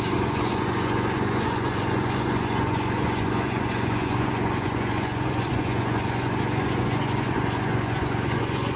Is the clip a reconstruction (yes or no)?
yes